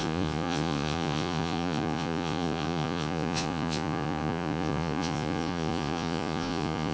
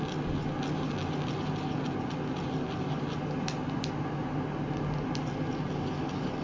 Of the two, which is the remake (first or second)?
first